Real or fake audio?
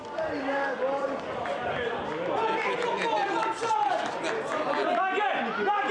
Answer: real